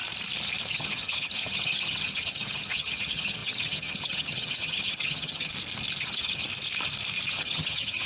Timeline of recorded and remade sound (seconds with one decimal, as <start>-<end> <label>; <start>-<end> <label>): 0.0-0.7 recorded; 0.7-5.5 remade; 5.5-6.0 recorded; 6.0-6.4 remade; 6.4-7.3 recorded; 7.3-8.1 remade

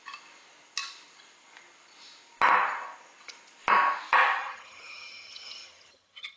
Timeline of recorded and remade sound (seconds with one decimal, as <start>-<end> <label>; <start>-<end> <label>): 0.0-4.4 recorded; 4.4-6.4 remade

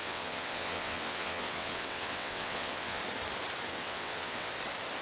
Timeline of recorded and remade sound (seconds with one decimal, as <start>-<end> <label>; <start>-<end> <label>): 0.0-3.0 remade; 3.0-3.7 recorded; 3.7-4.5 remade; 4.5-5.0 recorded

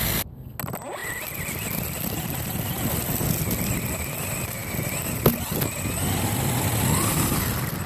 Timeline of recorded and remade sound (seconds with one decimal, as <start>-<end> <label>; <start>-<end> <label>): 0.0-7.9 recorded

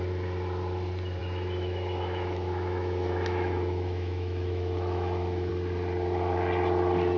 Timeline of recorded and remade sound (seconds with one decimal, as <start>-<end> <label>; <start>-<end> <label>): 0.0-1.2 recorded; 1.2-5.5 remade; 5.5-7.2 recorded

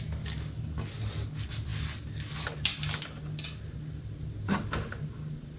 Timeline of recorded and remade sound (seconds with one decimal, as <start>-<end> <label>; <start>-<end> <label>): 0.0-5.6 recorded